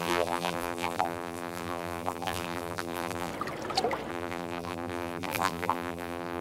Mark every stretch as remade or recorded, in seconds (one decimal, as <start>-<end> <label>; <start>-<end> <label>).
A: 0.0-3.3 remade; 3.3-4.1 recorded; 4.1-6.4 remade